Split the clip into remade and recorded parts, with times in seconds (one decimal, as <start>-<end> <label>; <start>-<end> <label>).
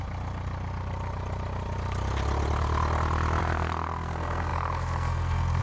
0.0-3.4 recorded; 3.4-5.6 remade